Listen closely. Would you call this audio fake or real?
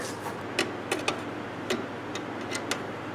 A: real